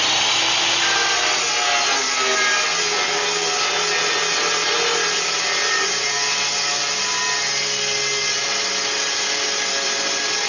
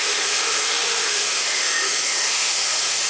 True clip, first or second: first